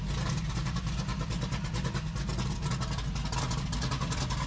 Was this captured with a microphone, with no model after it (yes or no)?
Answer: yes